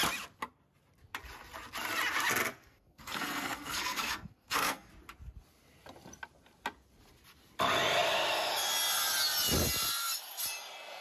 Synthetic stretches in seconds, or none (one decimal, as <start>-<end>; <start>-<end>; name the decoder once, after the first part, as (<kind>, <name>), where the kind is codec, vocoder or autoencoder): 2.5-4.9 (codec, SNAC)